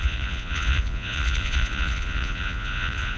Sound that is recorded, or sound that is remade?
remade